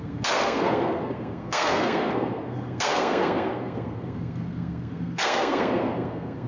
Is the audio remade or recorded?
remade